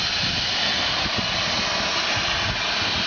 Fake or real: real